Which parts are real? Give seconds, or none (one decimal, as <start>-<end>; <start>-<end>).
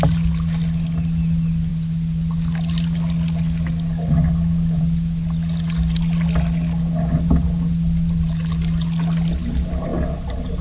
0.0-10.6